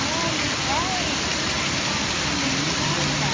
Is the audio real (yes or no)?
yes